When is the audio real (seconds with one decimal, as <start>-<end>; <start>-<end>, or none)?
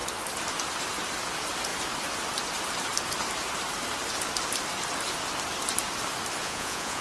0.0-6.4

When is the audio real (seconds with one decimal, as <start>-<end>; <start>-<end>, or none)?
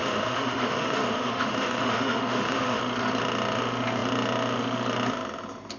2.8-5.8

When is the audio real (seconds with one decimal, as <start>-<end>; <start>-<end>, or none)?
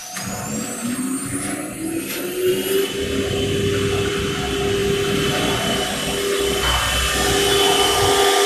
0.0-8.5